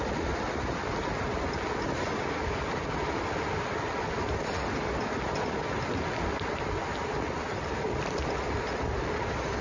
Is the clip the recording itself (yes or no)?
yes